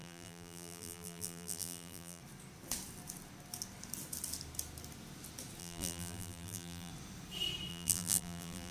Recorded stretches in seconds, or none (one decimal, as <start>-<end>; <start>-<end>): 2.2-5.6; 6.9-7.7